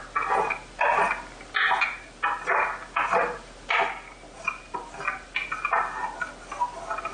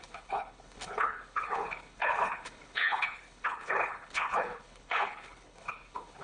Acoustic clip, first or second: first